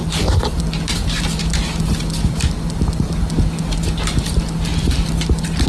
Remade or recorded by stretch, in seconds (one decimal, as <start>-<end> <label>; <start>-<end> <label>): 0.0-5.7 recorded